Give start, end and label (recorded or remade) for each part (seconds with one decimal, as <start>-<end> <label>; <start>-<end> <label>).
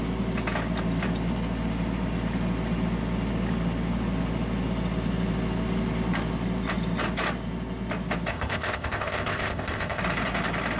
0.0-8.3 recorded; 8.3-10.0 remade; 10.0-10.8 recorded